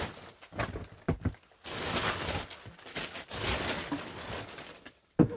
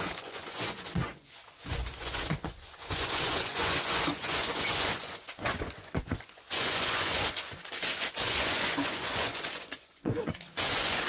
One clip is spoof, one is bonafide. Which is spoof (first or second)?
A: second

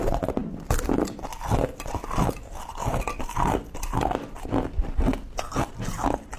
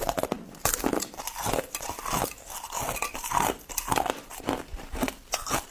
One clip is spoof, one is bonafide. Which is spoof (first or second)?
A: second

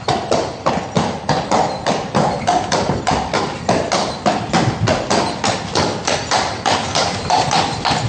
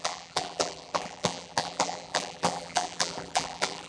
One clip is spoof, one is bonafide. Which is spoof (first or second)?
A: second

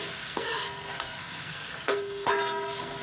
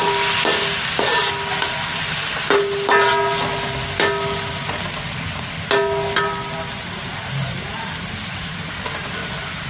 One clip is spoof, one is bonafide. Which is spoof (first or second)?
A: first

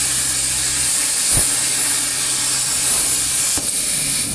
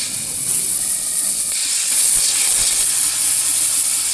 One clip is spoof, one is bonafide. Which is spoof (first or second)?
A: second